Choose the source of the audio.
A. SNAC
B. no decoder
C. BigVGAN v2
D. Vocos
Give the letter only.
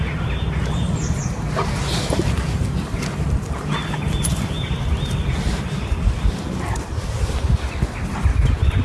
B